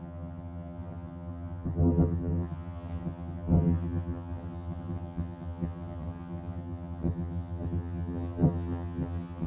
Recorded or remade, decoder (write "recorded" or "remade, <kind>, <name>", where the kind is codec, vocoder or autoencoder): remade, vocoder, HiFi-GAN